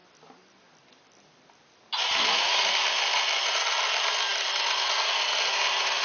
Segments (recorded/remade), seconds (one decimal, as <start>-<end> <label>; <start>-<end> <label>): 0.0-3.6 remade; 3.6-6.0 recorded